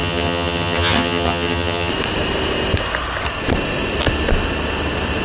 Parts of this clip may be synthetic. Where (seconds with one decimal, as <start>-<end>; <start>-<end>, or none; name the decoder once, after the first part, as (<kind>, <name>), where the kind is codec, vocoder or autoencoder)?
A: 0.0-1.9 (vocoder, HiFi-GAN)